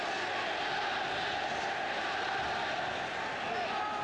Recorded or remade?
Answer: recorded